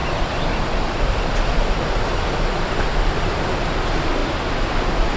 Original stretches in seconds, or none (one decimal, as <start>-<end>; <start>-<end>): 1.3-5.2